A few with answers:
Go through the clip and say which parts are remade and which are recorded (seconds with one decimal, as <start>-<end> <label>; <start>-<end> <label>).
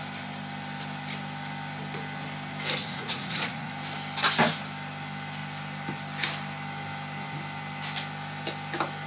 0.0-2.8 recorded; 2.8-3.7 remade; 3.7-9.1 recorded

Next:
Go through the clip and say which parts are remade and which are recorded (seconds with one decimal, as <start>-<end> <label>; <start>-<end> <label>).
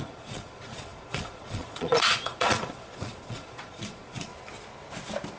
0.0-4.3 remade; 4.3-5.4 recorded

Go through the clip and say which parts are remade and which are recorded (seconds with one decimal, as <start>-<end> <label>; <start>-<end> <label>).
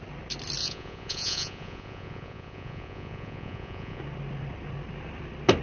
0.0-0.6 recorded; 0.6-4.0 remade; 4.0-5.6 recorded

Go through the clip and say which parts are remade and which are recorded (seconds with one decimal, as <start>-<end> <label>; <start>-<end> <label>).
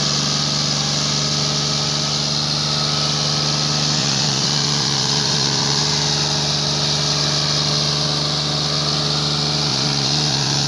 0.0-4.0 recorded; 4.0-5.8 remade; 5.8-9.7 recorded; 9.7-10.7 remade